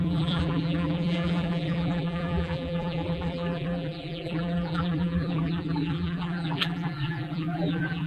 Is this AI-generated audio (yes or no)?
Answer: yes